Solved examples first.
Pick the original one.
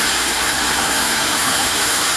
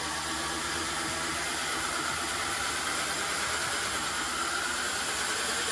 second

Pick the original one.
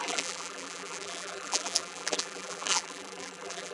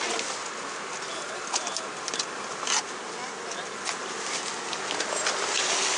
second